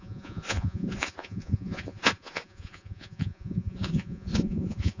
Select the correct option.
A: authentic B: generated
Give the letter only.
B